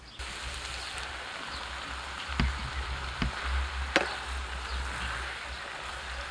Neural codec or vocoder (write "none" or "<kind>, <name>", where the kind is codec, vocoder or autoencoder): none